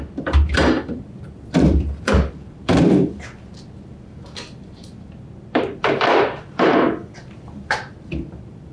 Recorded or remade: remade